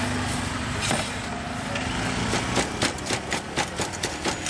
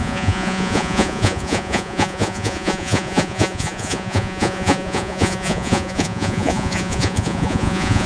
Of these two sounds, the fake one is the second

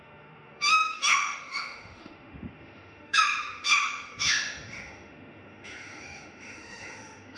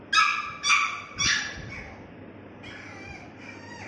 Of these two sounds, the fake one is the first